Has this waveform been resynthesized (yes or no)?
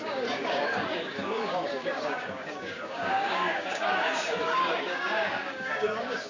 yes